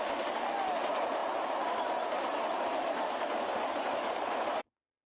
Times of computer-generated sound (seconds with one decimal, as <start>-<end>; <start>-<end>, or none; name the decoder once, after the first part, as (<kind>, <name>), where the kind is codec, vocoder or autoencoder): none

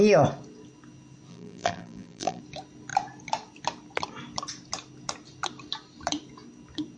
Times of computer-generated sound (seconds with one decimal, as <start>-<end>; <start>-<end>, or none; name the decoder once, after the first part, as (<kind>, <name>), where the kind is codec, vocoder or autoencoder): 1.3-2.4 (vocoder, BigVGAN v2)

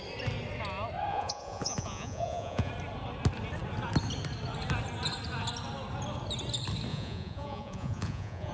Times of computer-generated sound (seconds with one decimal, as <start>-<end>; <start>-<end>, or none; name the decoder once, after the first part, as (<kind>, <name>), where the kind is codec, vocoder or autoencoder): 1.1-2.7 (vocoder, Vocos); 6.9-8.5

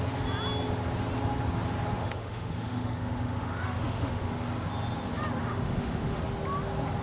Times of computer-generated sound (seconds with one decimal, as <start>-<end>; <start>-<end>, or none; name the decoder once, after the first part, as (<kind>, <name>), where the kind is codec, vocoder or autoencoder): 1.9-4.3 (autoencoder, DAC-VAE); 5.4-6.2

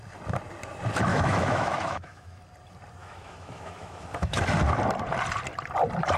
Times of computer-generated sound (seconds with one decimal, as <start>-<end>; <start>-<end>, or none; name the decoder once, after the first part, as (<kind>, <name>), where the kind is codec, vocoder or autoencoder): 1.1-2.4 (autoencoder, DAC-VAE); 3.0-4.4

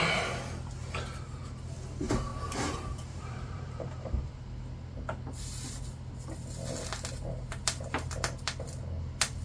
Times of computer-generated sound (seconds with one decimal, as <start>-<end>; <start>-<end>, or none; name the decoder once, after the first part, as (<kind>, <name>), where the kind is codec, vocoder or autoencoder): 2.3-4.3 (vocoder, BigVGAN v2)

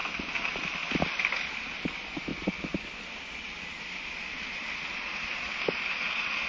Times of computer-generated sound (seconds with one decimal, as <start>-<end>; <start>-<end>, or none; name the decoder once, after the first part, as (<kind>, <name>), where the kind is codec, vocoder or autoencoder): none

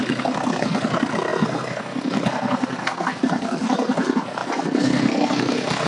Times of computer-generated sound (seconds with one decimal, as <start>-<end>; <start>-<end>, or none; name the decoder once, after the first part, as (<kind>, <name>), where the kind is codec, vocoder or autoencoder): 0.0-5.9 (codec, SNAC)